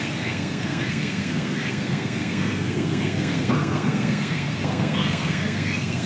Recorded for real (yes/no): no